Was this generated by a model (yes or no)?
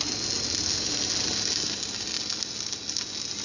no